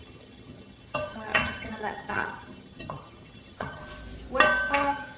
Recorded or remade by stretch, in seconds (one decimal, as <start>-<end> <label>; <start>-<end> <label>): 0.0-3.8 remade; 3.8-4.7 recorded; 4.7-5.2 remade